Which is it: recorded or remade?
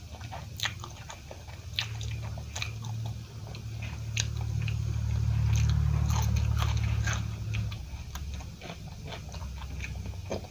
recorded